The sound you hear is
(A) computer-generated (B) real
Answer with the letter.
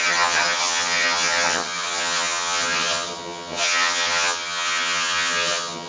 A